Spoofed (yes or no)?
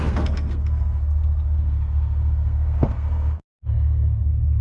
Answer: yes